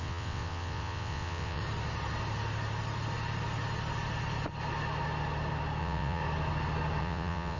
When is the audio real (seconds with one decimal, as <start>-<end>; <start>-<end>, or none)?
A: 1.6-5.8; 6.2-7.0

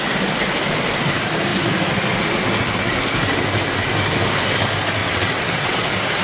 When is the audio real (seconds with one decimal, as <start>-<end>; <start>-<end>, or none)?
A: 0.0-5.0; 5.8-6.2

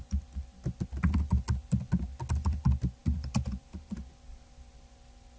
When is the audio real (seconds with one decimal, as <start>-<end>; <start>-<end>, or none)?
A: 0.0-5.4

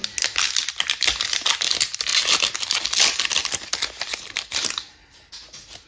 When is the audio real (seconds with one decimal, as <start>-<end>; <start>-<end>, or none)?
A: 0.0-5.9

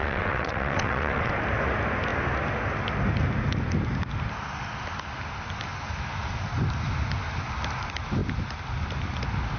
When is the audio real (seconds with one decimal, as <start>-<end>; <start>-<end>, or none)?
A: 1.3-9.6